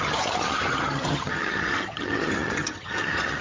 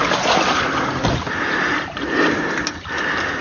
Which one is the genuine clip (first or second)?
second